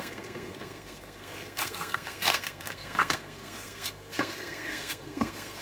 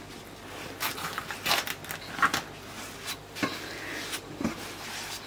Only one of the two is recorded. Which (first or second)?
second